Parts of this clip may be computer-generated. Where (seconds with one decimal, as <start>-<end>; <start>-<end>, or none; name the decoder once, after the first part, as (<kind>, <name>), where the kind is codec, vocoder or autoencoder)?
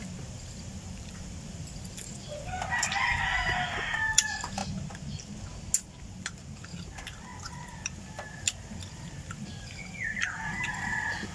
0.0-4.6 (vocoder, BigVGAN v2); 6.0-11.3